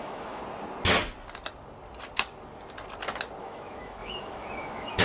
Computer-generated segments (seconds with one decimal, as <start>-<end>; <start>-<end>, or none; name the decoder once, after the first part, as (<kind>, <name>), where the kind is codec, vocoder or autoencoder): 0.0-0.4 (autoencoder, DAC-VAE); 3.4-5.0